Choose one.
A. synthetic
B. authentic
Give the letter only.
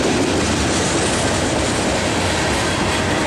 B